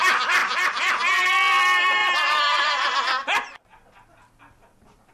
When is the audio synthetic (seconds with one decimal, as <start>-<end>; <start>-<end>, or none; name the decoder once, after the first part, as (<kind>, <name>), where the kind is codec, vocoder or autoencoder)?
0.4-1.3 (vocoder, BigVGAN v2); 2.0-5.1